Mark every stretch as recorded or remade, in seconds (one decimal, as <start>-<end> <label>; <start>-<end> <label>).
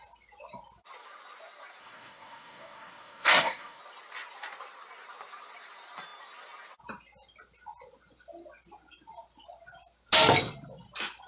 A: 0.0-1.8 recorded; 1.8-3.8 remade; 3.8-11.3 recorded